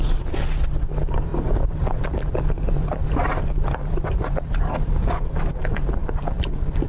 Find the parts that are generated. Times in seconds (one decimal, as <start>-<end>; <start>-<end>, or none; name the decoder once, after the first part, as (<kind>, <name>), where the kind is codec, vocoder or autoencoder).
0.0-6.9 (vocoder, BigVGAN v2)